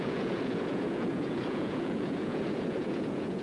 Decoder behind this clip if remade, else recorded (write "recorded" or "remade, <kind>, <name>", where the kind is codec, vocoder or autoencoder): remade, vocoder, Vocos